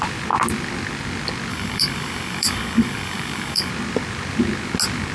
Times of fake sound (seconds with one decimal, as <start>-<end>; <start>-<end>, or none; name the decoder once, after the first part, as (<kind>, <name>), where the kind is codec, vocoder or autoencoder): 1.5-3.7 (codec, DAC)